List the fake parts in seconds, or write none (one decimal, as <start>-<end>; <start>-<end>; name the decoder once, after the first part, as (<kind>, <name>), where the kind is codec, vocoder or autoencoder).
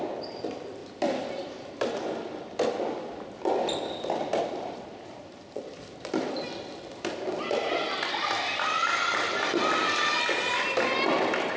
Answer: none